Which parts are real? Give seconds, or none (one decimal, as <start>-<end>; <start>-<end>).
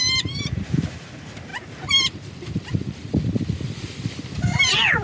1.5-4.5